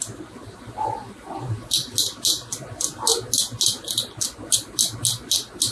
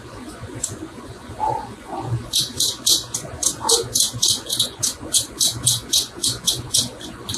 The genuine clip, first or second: first